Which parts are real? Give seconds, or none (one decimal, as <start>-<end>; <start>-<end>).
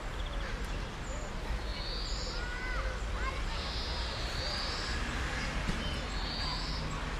0.0-7.2